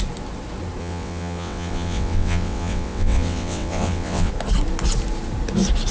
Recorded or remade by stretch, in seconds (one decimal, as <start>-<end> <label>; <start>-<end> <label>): 0.0-0.8 recorded; 0.8-4.3 remade; 4.3-5.9 recorded